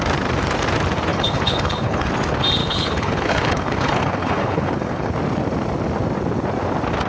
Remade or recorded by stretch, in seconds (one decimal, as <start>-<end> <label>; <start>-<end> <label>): 0.0-1.1 recorded; 1.1-2.1 remade; 2.1-2.6 recorded; 2.6-5.1 remade; 5.1-7.1 recorded